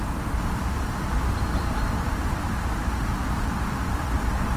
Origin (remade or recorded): recorded